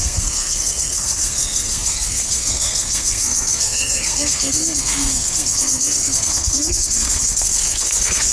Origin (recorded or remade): remade